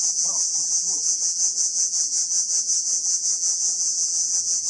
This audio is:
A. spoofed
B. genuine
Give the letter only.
A